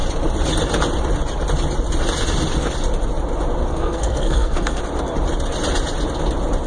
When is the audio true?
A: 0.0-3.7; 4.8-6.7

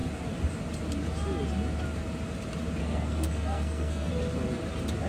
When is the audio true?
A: 0.0-2.8; 4.1-5.1

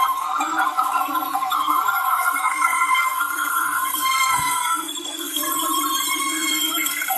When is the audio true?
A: 5.4-6.2